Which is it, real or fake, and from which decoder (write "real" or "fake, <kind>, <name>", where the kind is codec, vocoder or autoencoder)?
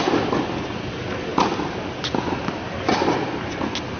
real